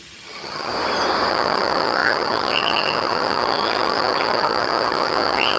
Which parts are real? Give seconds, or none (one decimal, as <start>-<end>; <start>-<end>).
0.7-1.3